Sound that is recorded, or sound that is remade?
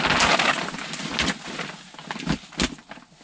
recorded